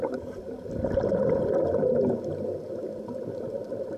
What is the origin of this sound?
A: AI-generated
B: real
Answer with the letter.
B